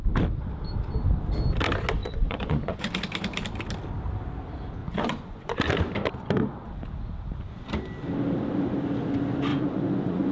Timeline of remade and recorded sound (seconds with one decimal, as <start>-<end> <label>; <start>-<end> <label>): 0.0-2.0 recorded; 2.0-2.9 remade; 2.9-4.8 recorded; 4.8-5.5 remade; 5.5-9.5 recorded; 9.5-10.3 remade